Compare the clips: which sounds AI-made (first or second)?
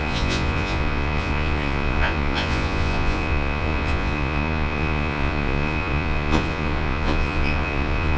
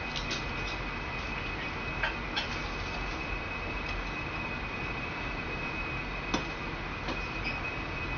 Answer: first